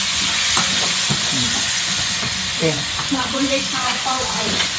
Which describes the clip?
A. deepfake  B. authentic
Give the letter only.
A